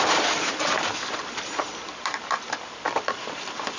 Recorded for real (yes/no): yes